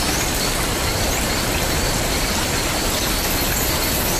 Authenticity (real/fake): real